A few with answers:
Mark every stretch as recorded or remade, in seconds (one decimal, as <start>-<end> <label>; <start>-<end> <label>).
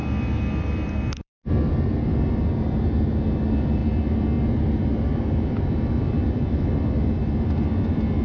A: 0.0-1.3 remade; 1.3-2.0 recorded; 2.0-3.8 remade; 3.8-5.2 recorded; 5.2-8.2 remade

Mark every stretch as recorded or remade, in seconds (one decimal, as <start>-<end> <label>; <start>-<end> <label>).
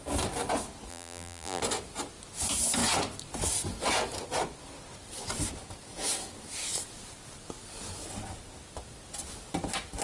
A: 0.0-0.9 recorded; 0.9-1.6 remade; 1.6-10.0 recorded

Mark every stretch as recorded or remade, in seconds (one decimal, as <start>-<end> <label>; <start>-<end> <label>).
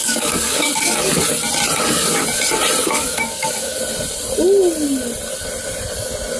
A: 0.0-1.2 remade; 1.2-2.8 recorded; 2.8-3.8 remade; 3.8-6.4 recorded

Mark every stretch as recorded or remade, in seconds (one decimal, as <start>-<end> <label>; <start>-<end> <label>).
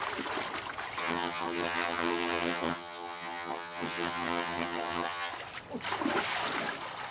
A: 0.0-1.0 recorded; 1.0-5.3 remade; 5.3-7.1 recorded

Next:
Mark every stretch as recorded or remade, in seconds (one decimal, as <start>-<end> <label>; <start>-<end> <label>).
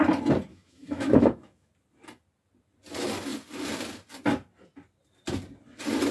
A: 0.0-0.5 recorded; 0.5-1.7 remade; 1.7-6.1 recorded